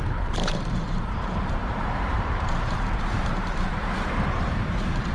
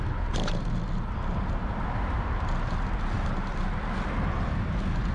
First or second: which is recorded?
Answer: second